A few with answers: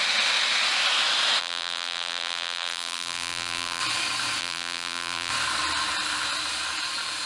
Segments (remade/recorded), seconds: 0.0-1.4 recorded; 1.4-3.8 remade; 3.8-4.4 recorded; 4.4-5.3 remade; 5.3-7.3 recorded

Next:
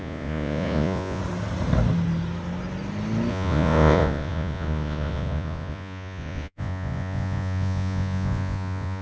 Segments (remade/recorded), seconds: 0.0-1.2 remade; 1.2-3.3 recorded; 3.3-9.0 remade

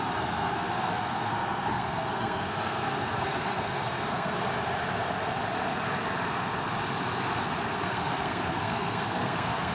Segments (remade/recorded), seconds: 0.0-4.4 remade; 4.4-7.6 recorded; 7.6-9.7 remade

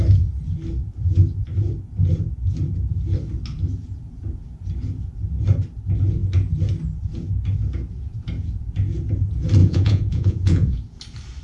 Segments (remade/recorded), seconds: 0.0-9.6 recorded; 9.6-10.8 remade; 10.8-11.4 recorded

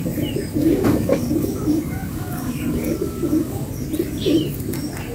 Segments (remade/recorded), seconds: 0.0-0.6 recorded; 0.6-3.7 remade; 3.7-5.1 recorded

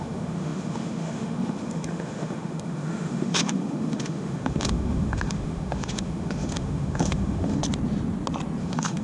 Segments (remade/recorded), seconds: 0.0-7.6 remade; 7.6-8.6 recorded; 8.6-9.0 remade

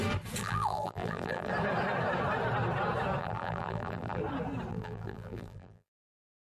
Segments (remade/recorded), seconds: 0.0-0.4 recorded; 0.4-1.5 remade; 1.5-3.2 recorded; 3.2-4.2 remade; 4.2-4.7 recorded; 4.7-6.0 remade; 6.0-6.5 recorded

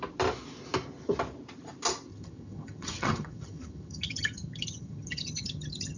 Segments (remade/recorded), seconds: 0.0-2.1 recorded; 2.1-6.0 remade